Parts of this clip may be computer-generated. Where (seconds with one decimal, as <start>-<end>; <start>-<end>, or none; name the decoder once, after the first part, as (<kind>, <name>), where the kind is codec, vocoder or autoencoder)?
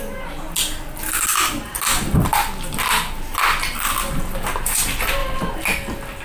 none